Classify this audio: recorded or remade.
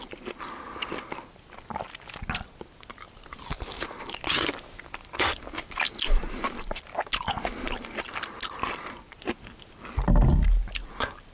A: recorded